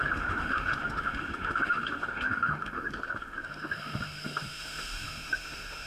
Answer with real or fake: fake